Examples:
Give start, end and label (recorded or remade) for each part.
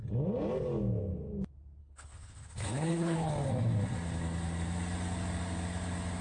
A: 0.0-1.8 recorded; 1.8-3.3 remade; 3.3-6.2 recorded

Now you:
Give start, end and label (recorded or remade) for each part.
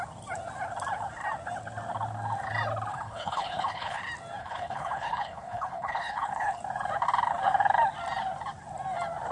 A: 0.0-2.9 recorded; 2.9-4.0 remade; 4.0-4.4 recorded; 4.4-6.6 remade; 6.6-9.3 recorded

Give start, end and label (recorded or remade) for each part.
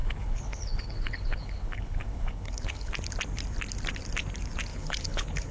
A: 0.0-2.9 remade; 2.9-4.7 recorded; 4.7-5.5 remade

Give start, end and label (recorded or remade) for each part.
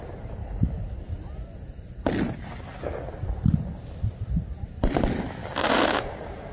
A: 0.0-0.4 recorded; 0.4-1.0 remade; 1.0-6.5 recorded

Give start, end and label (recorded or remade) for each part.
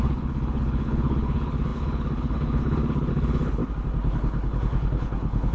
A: 0.0-3.6 remade; 3.6-4.1 recorded; 4.1-5.5 remade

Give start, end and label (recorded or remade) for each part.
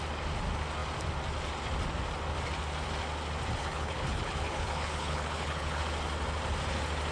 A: 0.0-3.6 recorded; 3.6-5.8 remade; 5.8-7.1 recorded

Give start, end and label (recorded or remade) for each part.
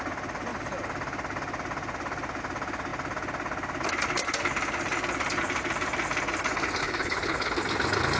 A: 0.0-6.8 recorded; 6.8-7.6 remade; 7.6-8.2 recorded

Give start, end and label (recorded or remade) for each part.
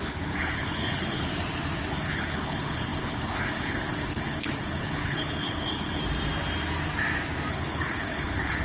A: 0.0-1.3 remade; 1.3-1.9 recorded; 1.9-6.0 remade; 6.0-7.5 recorded; 7.5-8.6 remade